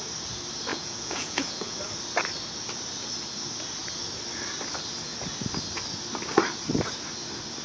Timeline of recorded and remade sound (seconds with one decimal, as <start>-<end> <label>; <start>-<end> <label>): 0.0-0.7 recorded; 0.7-1.8 remade; 1.8-7.6 recorded